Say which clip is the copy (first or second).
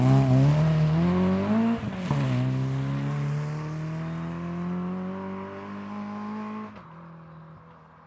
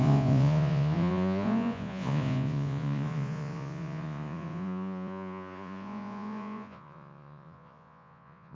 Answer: second